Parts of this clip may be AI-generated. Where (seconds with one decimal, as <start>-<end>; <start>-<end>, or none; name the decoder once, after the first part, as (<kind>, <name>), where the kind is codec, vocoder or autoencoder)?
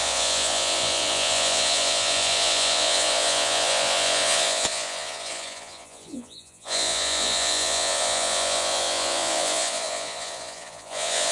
0.0-11.3 (vocoder, Vocos)